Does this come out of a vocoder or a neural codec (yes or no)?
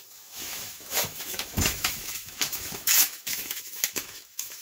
yes